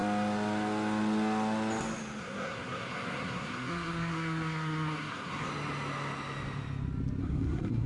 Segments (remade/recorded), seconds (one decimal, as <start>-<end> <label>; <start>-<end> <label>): 0.0-2.2 recorded; 2.2-5.5 remade; 5.5-7.2 recorded; 7.2-7.9 remade